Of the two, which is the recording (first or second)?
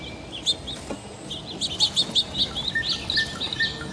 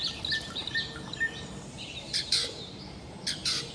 first